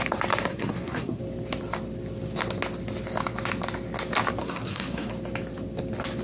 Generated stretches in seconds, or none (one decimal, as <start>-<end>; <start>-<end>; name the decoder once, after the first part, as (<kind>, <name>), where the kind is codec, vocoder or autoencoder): 0.5-1.2 (codec, SNAC); 4.4-5.1